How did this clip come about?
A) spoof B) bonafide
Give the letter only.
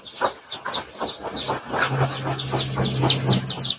B